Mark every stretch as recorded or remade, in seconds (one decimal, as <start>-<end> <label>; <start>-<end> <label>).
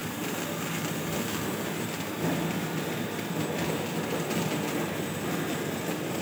0.0-6.2 recorded